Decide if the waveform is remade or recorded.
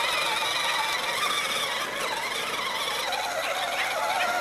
recorded